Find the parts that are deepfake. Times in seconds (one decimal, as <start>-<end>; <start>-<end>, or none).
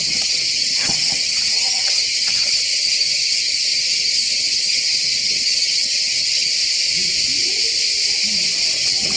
0.0-6.5; 8.7-9.2